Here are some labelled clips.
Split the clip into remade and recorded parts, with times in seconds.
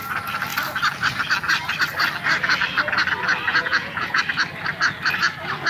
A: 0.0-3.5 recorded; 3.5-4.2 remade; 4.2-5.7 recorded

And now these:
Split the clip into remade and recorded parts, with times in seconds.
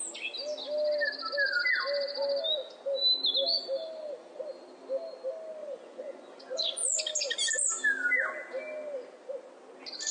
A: 0.0-5.6 recorded; 5.6-7.0 remade; 7.0-10.1 recorded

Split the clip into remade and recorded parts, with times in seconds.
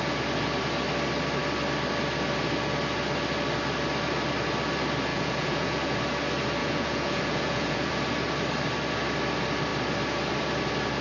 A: 0.0-5.1 recorded; 5.1-6.0 remade; 6.0-6.6 recorded; 6.6-7.9 remade; 7.9-11.0 recorded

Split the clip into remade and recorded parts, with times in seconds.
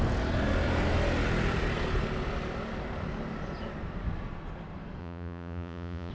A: 0.0-5.0 recorded; 5.0-6.1 remade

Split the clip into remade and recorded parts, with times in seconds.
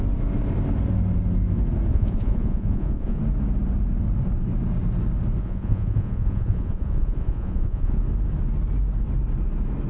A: 0.0-1.9 recorded; 1.9-3.2 remade; 3.2-5.4 recorded; 5.4-8.0 remade; 8.0-9.9 recorded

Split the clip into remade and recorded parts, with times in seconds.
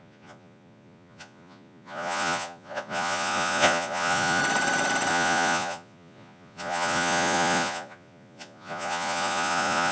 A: 0.0-4.4 remade; 4.4-5.1 recorded; 5.1-9.9 remade